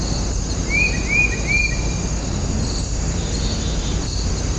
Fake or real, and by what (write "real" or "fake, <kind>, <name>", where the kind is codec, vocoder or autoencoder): real